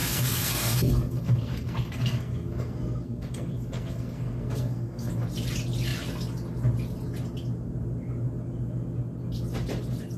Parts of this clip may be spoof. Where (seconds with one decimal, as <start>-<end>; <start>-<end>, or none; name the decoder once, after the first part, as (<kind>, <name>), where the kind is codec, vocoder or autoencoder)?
0.0-5.1 (codec, SNAC)